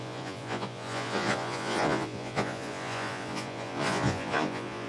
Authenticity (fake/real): fake